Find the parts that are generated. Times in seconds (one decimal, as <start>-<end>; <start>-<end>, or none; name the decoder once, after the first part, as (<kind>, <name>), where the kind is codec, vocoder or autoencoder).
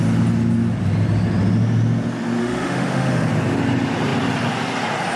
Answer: 2.4-3.3 (autoencoder, DAC-VAE)